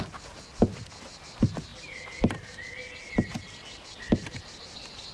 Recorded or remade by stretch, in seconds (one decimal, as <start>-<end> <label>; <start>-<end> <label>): 0.0-5.1 recorded